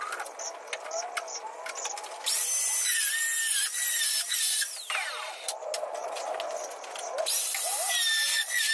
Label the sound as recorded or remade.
recorded